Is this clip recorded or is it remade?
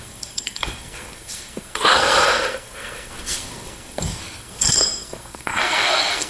remade